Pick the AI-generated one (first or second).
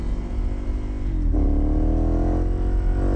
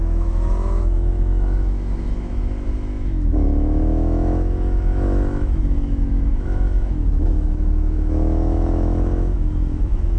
second